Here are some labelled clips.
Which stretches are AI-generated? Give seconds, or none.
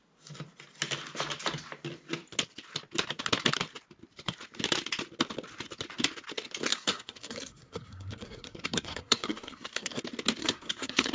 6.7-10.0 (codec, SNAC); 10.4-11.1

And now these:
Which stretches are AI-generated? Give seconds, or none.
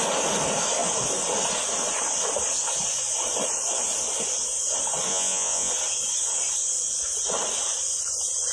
5.1-5.7 (vocoder, Vocos)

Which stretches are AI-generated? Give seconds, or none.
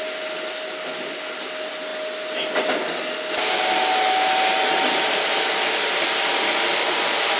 none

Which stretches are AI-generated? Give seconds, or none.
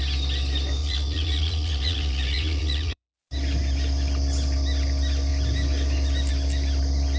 0.8-3.2 (vocoder, Vocos)